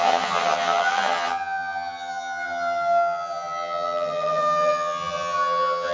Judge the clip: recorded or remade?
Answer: remade